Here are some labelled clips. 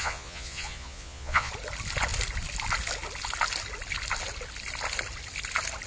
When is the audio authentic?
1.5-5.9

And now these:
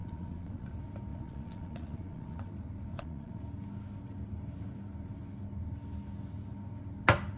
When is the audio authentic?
0.7-1.1; 2.5-2.9; 3.4-7.4

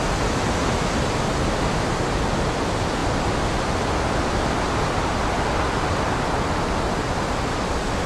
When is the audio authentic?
0.0-8.1

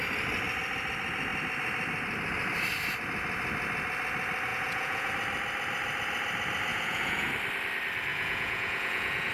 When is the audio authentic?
0.0-4.5; 5.1-6.7; 7.3-8.1

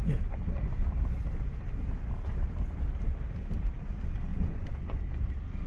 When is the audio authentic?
0.0-4.3; 5.0-5.7

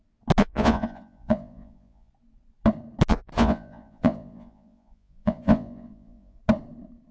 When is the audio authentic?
0.0-0.4; 2.1-3.1; 6.4-7.1